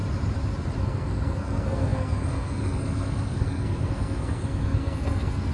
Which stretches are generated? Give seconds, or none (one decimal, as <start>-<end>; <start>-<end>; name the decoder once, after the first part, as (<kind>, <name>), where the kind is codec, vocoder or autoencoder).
0.8-5.5 (codec, SNAC)